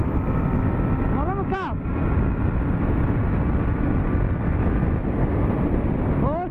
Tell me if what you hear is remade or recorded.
recorded